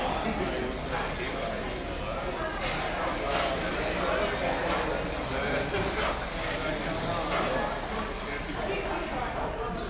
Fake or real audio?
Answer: real